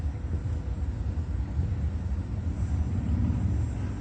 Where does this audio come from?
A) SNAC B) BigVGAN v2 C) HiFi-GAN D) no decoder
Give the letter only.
D